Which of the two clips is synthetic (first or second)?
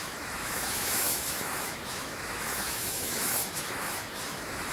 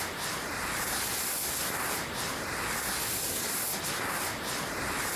first